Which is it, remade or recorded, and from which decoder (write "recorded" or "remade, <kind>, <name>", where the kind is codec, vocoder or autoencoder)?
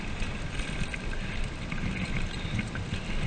recorded